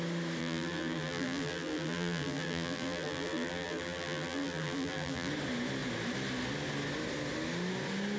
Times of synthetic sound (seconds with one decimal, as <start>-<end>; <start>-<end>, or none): 0.4-5.3